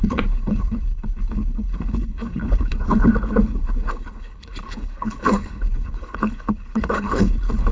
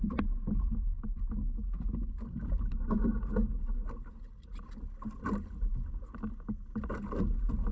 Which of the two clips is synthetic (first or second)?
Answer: first